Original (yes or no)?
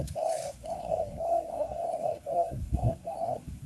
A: no